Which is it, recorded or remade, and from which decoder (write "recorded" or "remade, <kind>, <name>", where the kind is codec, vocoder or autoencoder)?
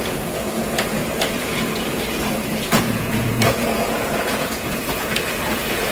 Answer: remade, vocoder, Vocos